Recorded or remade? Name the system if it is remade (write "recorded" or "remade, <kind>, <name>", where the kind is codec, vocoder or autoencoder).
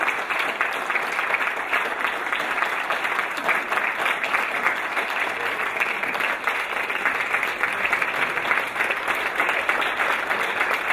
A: recorded